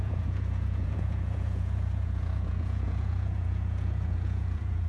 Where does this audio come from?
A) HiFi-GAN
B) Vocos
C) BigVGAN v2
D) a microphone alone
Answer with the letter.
B